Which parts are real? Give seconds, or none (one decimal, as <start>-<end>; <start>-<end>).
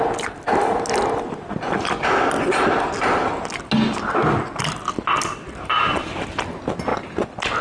0.0-7.6